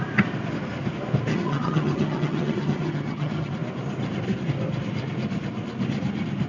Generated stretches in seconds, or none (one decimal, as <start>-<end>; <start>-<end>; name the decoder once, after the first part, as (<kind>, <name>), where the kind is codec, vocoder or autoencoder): 1.3-3.5 (vocoder, HiFi-GAN)